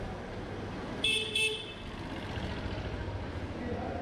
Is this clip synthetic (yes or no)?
no